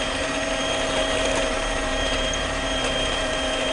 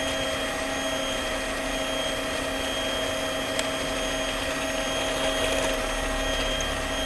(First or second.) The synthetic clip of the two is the first